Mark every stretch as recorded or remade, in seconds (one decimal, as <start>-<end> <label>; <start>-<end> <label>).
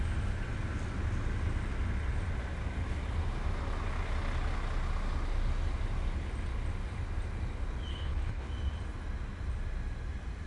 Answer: 0.0-7.9 recorded; 7.9-8.5 remade; 8.5-10.5 recorded